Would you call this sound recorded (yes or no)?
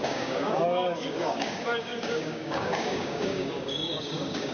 no